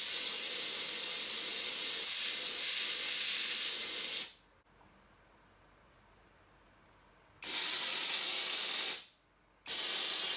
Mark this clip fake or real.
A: real